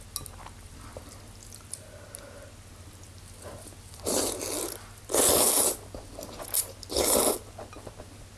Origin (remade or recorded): recorded